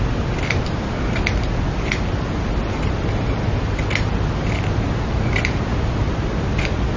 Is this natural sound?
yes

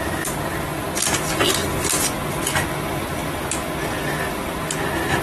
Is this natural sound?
yes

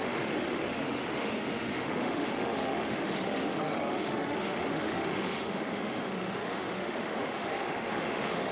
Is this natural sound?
no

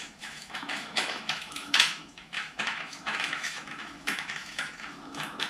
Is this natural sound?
no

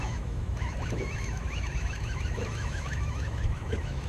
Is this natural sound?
no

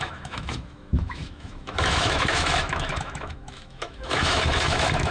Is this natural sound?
no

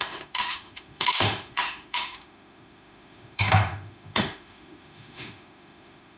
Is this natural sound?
no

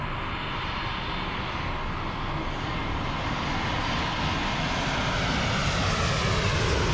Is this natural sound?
yes